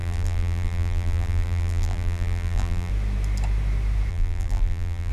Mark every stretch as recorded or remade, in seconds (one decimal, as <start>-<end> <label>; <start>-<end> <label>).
0.0-2.9 remade; 2.9-4.1 recorded; 4.1-5.1 remade